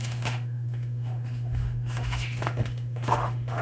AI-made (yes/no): yes